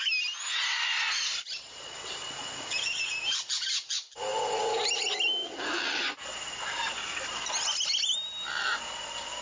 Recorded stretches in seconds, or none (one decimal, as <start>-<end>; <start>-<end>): 0.0-9.4